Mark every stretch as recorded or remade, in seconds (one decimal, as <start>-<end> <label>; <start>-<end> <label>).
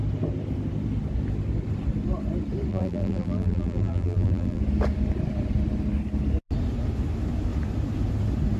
0.0-2.7 recorded; 2.7-4.6 remade; 4.6-8.6 recorded